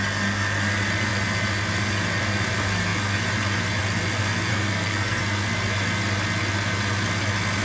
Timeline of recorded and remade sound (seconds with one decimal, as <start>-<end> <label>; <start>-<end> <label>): 0.0-4.5 recorded; 4.5-5.2 remade; 5.2-7.6 recorded